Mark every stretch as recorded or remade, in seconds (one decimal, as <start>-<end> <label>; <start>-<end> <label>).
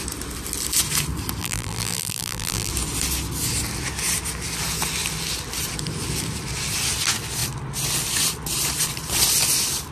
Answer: 0.0-1.4 recorded; 1.4-2.7 remade; 2.7-9.9 recorded